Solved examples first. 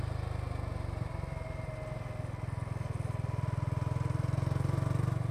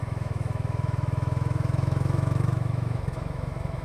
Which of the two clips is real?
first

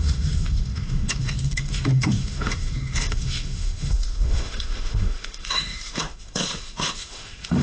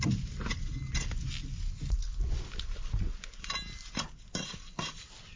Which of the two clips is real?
second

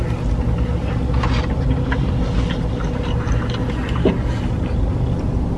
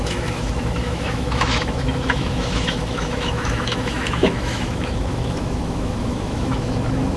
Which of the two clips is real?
first